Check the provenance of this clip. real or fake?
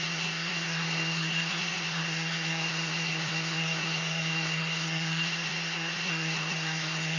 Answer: fake